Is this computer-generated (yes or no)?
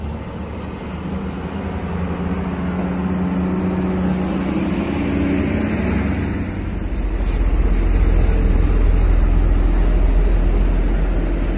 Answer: no